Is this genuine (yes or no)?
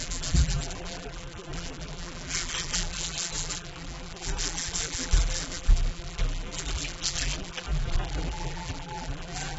no